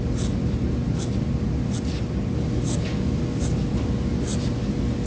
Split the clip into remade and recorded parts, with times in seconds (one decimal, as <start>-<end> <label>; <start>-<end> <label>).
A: 0.0-5.1 recorded